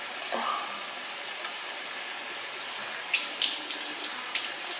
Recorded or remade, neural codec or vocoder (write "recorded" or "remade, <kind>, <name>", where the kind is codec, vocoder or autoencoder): recorded